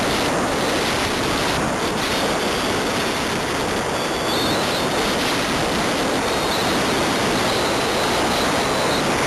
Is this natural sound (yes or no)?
yes